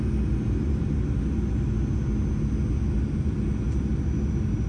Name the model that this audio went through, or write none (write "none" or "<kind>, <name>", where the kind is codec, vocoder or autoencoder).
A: none